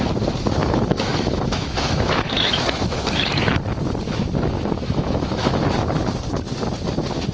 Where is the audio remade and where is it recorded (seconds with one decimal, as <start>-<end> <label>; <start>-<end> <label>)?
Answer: 0.0-0.6 recorded; 0.6-3.4 remade; 3.4-4.8 recorded; 4.8-5.5 remade; 5.5-7.3 recorded